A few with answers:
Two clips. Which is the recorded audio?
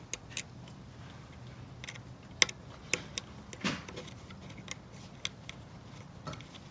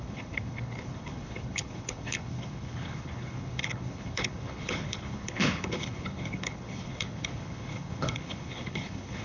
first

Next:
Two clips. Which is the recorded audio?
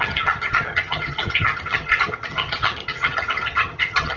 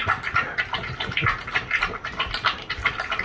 second